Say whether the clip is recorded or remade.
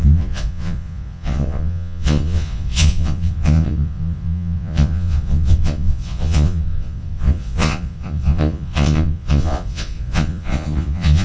remade